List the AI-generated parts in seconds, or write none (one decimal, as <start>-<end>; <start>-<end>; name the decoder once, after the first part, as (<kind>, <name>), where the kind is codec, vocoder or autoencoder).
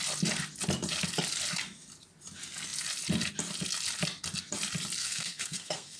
5.0-6.0 (codec, SNAC)